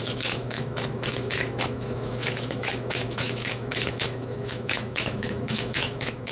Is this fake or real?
fake